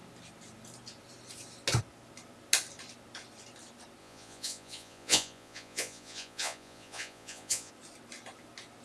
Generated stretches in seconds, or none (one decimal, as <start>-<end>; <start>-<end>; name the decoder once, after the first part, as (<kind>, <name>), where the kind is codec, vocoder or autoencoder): 4.0-7.7 (vocoder, Vocos)

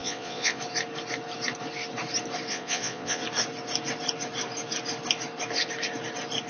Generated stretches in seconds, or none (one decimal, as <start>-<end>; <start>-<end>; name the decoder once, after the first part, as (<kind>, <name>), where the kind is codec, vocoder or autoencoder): 0.0-0.6 (vocoder, Vocos); 2.5-3.2

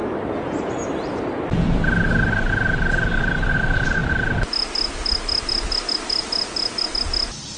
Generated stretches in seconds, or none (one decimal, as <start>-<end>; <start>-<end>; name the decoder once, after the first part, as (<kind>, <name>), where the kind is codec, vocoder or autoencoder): none

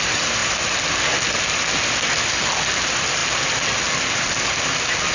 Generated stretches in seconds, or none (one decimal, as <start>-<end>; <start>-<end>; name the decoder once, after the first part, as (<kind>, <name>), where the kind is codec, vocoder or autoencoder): none

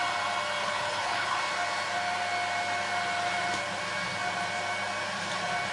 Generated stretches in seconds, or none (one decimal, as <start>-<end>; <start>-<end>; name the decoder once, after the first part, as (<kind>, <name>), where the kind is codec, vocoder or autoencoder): 0.6-1.4 (codec, HILCodec)

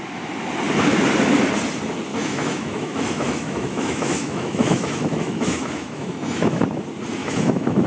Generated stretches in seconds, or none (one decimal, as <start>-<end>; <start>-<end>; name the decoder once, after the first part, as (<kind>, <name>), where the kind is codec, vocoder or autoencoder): 2.1-6.6 (autoencoder, DAC-VAE); 7.2-7.9

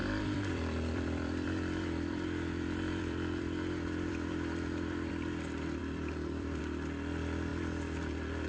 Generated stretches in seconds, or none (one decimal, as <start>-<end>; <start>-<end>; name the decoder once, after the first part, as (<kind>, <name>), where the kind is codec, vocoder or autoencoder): 0.0-5.1 (vocoder, BigVGAN v2); 5.8-6.6

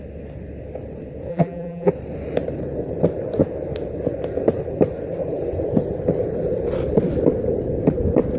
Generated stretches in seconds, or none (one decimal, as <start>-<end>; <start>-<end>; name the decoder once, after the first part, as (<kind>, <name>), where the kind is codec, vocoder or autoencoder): 1.3-1.9 (vocoder, BigVGAN v2)